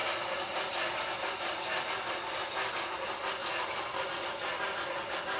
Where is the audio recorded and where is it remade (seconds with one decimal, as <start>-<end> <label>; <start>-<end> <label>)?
0.0-1.9 remade; 1.9-3.4 recorded; 3.4-4.3 remade; 4.3-5.4 recorded